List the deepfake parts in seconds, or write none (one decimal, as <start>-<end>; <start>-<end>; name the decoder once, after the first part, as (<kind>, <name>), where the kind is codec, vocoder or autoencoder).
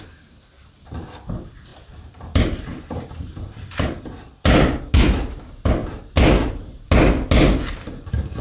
1.7-4.1 (vocoder, BigVGAN v2)